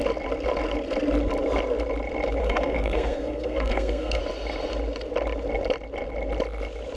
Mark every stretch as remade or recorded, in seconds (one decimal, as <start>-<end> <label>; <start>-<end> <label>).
0.0-2.4 recorded; 2.4-4.2 remade; 4.2-7.0 recorded